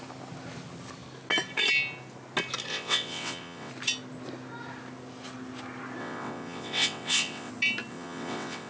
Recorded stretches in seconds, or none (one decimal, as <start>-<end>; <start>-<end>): 0.0-2.7; 3.7-6.0; 7.5-7.9